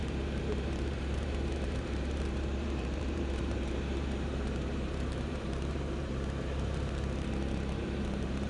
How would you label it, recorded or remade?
remade